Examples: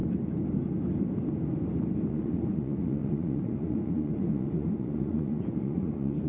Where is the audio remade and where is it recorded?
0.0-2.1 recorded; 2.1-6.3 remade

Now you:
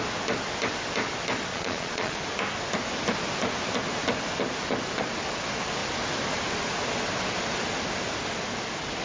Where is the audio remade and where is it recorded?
0.0-1.5 recorded; 1.5-2.2 remade; 2.2-9.0 recorded

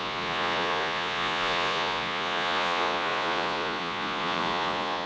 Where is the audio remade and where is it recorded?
0.0-5.1 remade